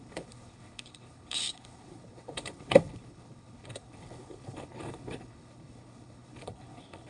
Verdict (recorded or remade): remade